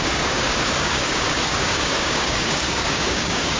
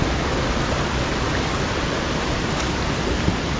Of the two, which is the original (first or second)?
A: second